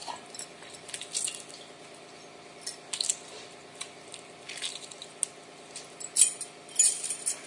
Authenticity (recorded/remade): recorded